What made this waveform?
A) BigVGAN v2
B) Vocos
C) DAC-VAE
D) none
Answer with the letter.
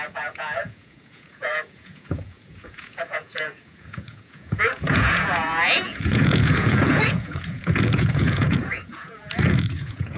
B